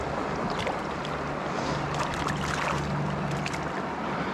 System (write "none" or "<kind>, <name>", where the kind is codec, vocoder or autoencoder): none